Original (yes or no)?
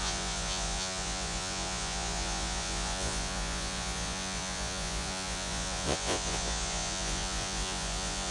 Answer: no